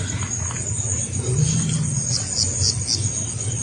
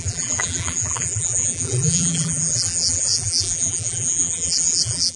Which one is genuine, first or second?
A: first